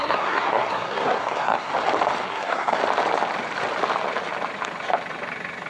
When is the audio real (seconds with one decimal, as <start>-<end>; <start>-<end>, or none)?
1.7-2.3; 2.8-5.7